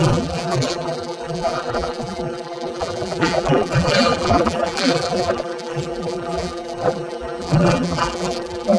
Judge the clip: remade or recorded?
remade